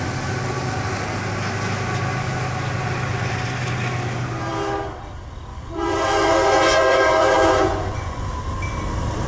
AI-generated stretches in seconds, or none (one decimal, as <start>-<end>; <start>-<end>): 5.5-8.3